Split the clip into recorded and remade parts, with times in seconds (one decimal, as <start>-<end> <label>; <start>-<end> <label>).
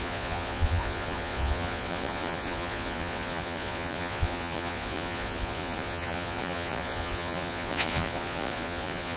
0.0-9.2 remade